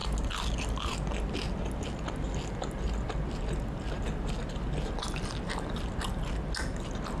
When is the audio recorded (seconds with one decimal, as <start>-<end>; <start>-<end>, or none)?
0.0-7.2